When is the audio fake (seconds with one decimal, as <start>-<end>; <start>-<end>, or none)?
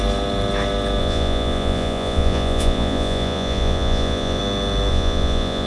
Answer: 1.0-4.4; 4.9-5.7